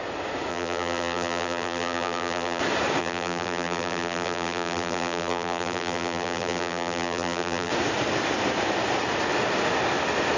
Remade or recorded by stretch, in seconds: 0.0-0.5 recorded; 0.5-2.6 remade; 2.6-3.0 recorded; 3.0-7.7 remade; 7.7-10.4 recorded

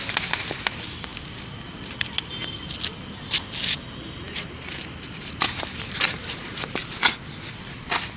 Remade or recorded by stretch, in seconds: 0.0-1.1 remade; 1.1-3.8 recorded; 3.8-6.8 remade; 6.8-8.2 recorded

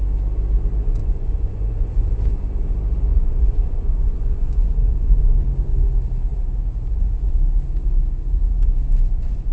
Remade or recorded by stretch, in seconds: 0.0-1.0 recorded; 1.0-2.1 remade; 2.1-3.1 recorded; 3.1-5.2 remade; 5.2-9.5 recorded

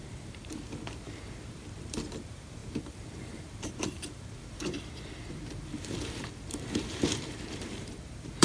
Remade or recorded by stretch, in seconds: 0.0-8.4 remade

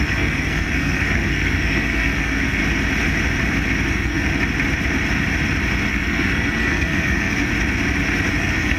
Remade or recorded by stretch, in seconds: 0.0-2.6 remade; 2.6-3.9 recorded; 3.9-4.3 remade; 4.3-5.9 recorded; 5.9-7.5 remade; 7.5-8.3 recorded; 8.3-8.8 remade